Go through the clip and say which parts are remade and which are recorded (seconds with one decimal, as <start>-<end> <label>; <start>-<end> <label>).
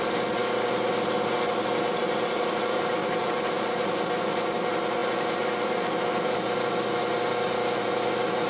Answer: 0.0-3.0 recorded; 3.0-4.0 remade; 4.0-8.5 recorded